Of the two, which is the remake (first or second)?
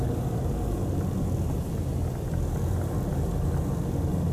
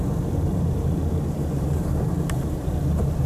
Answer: second